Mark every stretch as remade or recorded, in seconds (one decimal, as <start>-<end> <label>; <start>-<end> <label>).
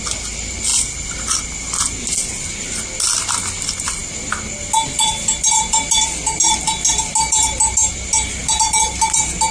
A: 0.0-9.5 recorded